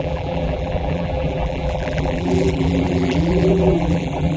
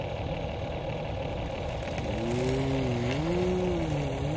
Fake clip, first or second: first